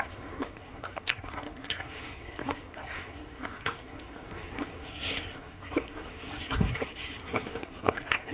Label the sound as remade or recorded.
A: remade